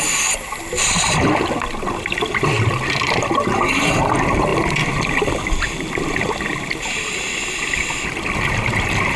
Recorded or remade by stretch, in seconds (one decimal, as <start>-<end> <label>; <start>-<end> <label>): 0.0-9.2 recorded